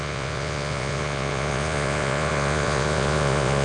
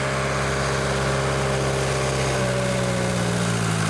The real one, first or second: second